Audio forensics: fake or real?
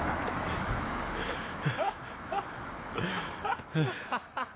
fake